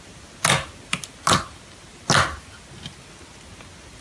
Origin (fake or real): real